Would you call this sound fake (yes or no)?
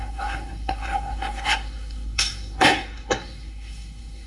yes